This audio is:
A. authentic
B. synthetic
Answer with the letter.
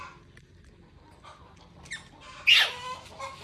A